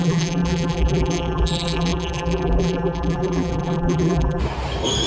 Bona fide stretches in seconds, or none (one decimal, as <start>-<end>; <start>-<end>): 4.4-5.1